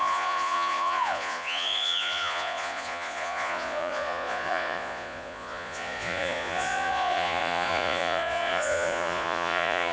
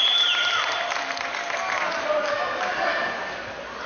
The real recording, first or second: second